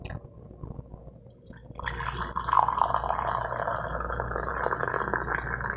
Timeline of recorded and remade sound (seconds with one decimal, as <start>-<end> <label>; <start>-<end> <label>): 0.0-5.8 recorded